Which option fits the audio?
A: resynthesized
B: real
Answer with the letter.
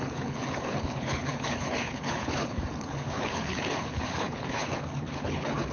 A